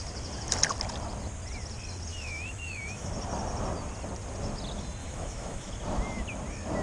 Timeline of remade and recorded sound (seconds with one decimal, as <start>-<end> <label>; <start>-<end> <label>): 0.0-2.1 recorded; 2.1-3.1 remade; 3.1-5.0 recorded; 5.0-5.7 remade; 5.7-6.8 recorded